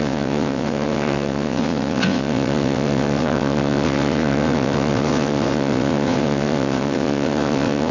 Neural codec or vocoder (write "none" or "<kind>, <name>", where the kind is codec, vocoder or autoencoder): vocoder, WaveNeXt